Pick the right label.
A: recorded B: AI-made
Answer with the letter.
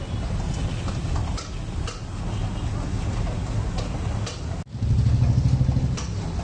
A